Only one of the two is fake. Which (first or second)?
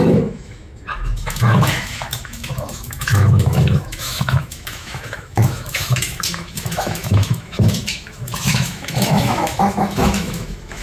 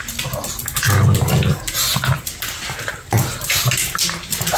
first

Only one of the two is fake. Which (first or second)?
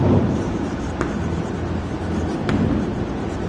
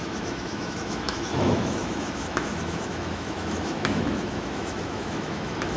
second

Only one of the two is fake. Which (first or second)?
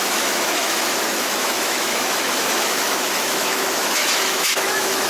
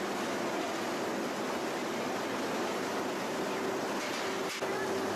first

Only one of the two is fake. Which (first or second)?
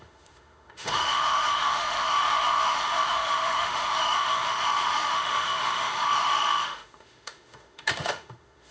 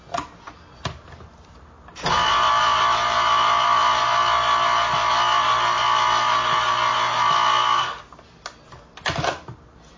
first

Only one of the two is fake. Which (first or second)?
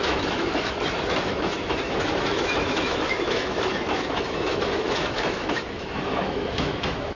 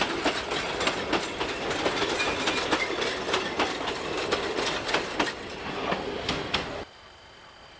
first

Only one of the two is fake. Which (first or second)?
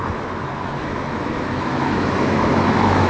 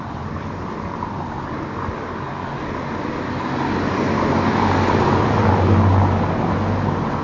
first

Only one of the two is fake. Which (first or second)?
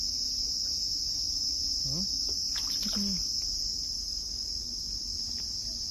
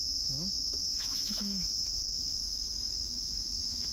second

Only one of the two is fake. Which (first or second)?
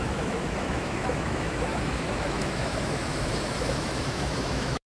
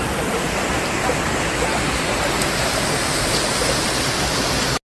first